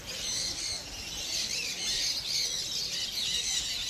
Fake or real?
real